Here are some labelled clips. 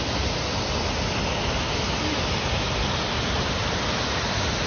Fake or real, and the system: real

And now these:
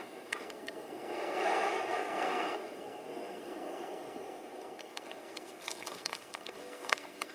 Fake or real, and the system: fake, codec, SNAC